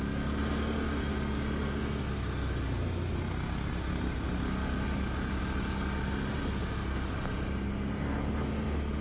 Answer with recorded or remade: recorded